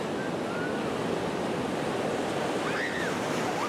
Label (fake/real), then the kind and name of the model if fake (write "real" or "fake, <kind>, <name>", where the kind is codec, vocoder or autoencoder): real